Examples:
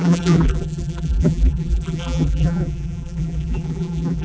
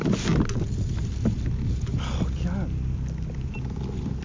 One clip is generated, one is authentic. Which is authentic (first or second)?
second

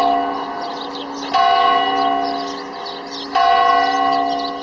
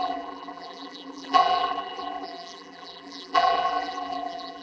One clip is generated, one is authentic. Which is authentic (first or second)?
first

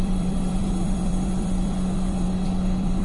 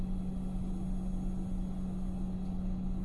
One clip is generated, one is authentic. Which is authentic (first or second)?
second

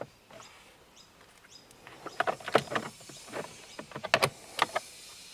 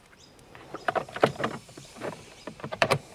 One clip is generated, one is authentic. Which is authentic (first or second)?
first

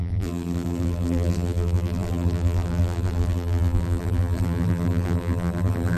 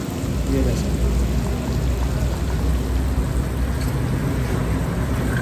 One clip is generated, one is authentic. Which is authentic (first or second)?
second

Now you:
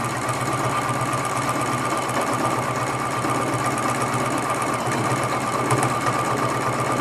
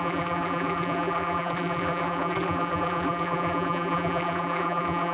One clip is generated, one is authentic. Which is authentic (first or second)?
first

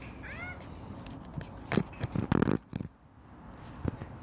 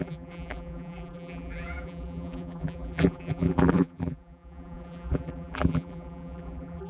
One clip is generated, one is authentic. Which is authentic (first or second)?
first